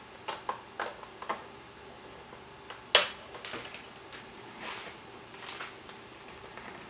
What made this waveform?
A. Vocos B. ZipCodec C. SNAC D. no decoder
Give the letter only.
D